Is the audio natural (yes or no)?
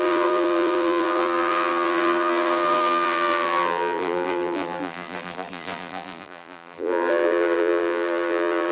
no